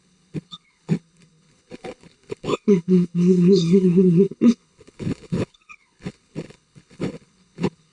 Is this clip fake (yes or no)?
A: yes